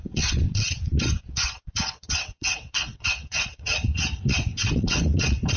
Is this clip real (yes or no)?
no